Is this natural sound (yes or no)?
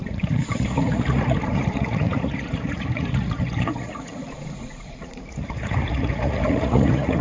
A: no